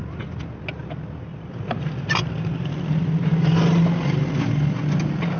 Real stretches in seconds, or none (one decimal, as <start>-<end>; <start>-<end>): 0.0-5.4